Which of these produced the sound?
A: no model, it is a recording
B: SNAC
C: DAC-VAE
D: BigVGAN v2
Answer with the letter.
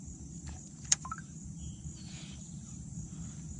D